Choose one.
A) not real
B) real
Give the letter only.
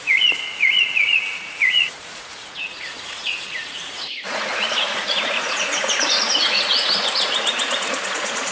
A